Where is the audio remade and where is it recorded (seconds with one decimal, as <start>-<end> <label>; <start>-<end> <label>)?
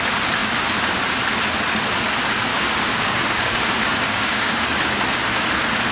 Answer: 0.0-2.5 recorded; 2.5-5.0 remade; 5.0-5.9 recorded